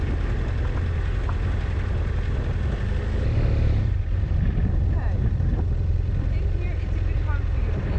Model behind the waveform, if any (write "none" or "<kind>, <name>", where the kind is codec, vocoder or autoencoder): none